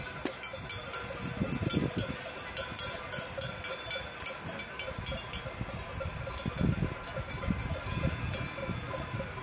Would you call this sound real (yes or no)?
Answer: yes